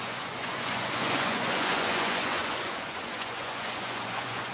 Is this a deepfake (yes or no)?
yes